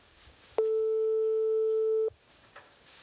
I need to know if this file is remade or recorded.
remade